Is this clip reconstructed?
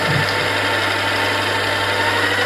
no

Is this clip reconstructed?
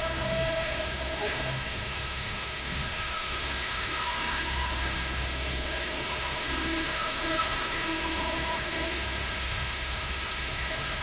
yes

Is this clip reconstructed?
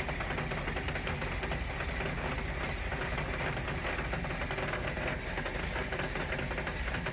no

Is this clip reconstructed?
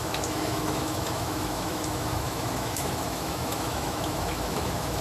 yes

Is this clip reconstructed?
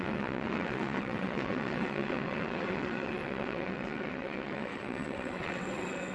yes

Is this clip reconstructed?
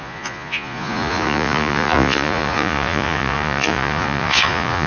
yes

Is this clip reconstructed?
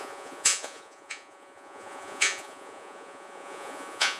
yes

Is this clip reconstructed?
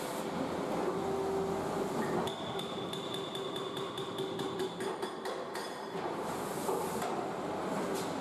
no